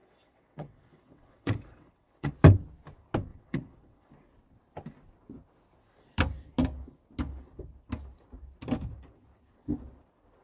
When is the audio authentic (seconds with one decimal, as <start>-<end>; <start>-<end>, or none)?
2.3-3.3; 4.1-10.4